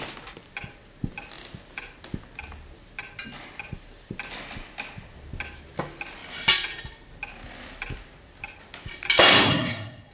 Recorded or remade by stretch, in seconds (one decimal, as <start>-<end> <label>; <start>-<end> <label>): 0.0-9.5 recorded; 9.5-10.1 remade